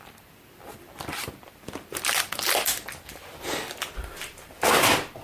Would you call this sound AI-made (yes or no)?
no